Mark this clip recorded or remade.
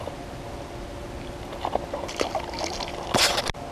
recorded